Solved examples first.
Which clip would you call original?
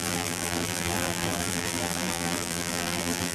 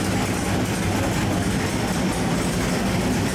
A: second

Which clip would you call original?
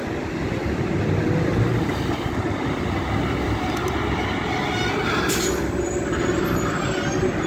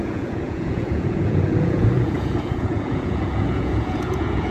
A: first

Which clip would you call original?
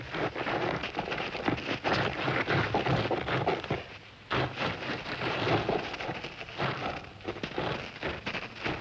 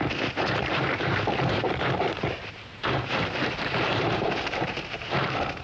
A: first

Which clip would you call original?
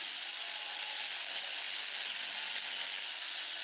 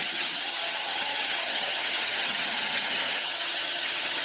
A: first